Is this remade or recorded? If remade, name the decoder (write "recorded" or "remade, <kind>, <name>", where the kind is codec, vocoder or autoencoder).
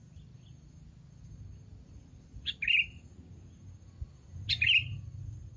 recorded